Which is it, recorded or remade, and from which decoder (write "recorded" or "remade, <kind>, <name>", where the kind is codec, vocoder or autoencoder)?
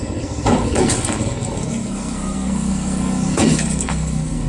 remade, codec, SNAC